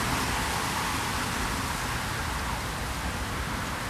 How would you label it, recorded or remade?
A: recorded